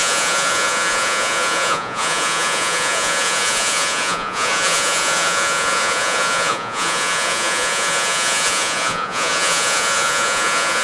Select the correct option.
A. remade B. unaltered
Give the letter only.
A